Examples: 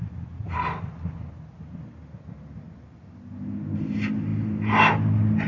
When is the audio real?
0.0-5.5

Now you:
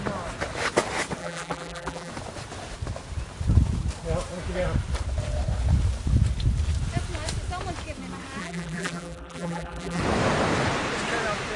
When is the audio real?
0.0-1.2; 2.1-8.4; 10.0-11.6

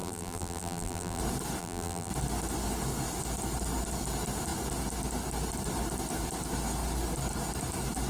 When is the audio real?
1.2-1.6; 2.1-8.1

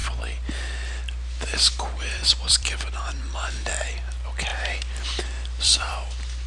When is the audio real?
3.7-4.5; 5.9-6.5

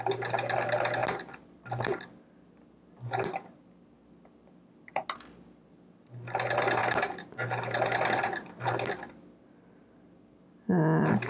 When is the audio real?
0.0-1.0; 2.2-11.3